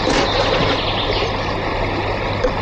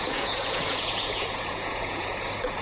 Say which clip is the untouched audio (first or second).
first